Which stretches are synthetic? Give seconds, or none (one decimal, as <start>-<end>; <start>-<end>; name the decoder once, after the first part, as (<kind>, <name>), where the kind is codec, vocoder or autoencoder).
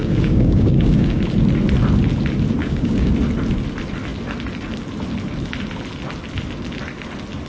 0.0-1.2 (codec, DAC); 2.6-3.1